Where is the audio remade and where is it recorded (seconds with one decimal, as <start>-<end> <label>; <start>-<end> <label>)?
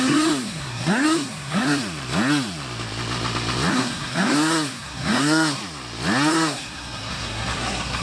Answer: 0.0-1.8 remade; 1.8-3.7 recorded; 3.7-5.6 remade; 5.6-6.3 recorded; 6.3-8.0 remade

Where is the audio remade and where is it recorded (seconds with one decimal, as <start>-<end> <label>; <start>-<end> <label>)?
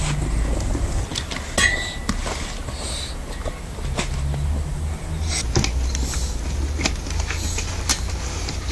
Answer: 0.0-8.7 recorded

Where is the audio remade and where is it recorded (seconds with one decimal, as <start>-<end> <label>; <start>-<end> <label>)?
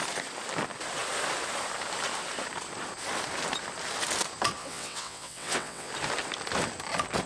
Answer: 0.0-4.6 recorded; 4.6-5.9 remade; 5.9-7.3 recorded